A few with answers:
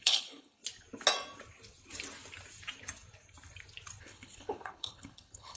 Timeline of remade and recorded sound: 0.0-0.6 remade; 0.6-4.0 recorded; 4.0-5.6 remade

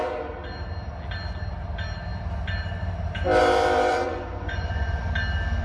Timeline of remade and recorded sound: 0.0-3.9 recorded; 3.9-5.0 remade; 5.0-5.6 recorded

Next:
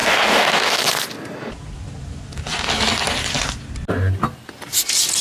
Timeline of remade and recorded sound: 0.0-0.8 remade; 0.8-5.2 recorded